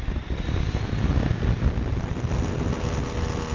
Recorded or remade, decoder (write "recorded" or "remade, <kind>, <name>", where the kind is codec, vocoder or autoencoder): recorded